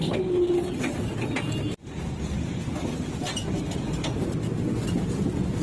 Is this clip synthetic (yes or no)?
no